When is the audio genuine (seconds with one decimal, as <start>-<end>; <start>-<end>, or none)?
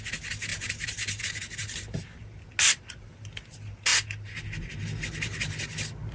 0.0-0.5; 1.2-6.1